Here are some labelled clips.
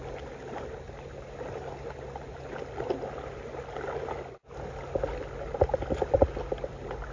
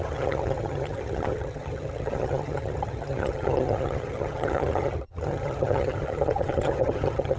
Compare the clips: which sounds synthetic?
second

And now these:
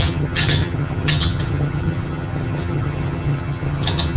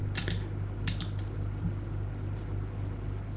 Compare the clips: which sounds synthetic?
first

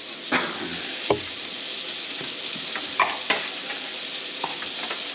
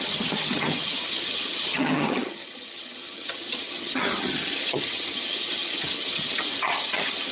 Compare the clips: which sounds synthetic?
second